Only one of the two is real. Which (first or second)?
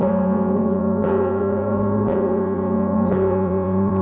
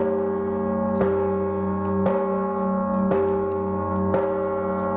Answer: second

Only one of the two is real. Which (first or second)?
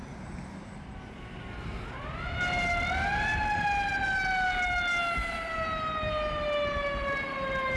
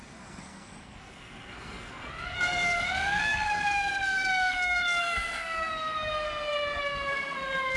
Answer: first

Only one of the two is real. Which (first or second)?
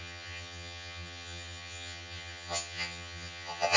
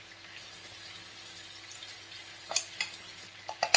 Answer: second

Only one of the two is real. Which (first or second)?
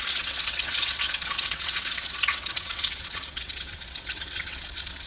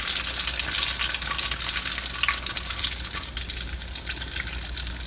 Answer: second